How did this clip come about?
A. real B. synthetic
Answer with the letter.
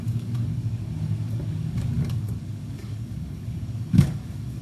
B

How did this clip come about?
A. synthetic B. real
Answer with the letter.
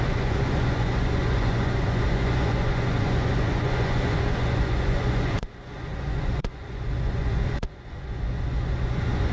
A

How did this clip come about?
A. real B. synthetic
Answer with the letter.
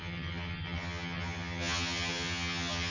B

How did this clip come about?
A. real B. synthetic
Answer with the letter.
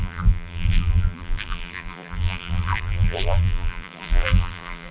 B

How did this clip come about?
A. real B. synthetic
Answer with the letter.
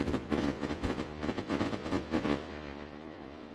B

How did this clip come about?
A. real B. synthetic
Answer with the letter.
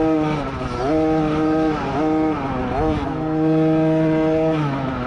A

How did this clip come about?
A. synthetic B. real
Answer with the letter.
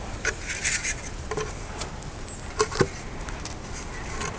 B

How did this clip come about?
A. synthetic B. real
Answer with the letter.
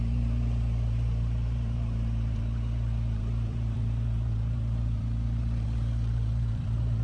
A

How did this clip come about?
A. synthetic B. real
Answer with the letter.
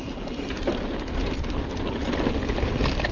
A